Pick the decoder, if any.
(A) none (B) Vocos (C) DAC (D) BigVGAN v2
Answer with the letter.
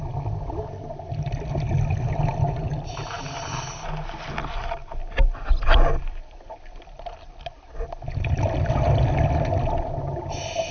A